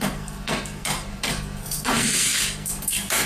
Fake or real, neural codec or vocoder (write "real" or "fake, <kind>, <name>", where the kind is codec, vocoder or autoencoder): fake, codec, SNAC